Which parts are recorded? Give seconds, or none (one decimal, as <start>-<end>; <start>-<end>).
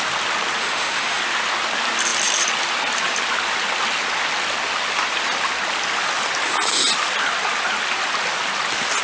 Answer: 0.0-0.6; 1.2-9.0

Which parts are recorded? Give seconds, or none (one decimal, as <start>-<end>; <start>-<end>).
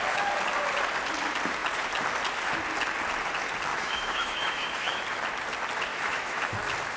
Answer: 0.0-3.7; 5.0-5.9; 6.5-7.0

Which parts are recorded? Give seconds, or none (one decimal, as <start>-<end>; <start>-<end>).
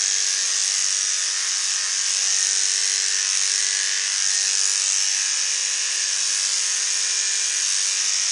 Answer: 0.0-8.3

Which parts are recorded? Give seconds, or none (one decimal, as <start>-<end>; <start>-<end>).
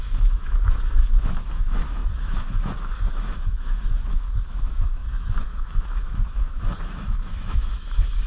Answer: none